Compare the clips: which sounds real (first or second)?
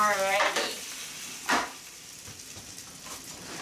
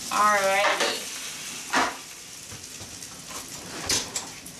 second